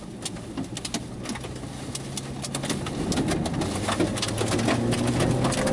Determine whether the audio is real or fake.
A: real